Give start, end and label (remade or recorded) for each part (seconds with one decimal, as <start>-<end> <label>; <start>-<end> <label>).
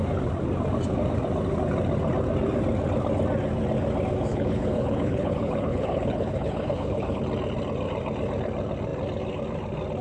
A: 0.0-4.3 recorded; 4.3-7.2 remade; 7.2-10.0 recorded